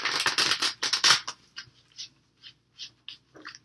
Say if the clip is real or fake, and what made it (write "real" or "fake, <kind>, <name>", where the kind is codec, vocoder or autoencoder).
real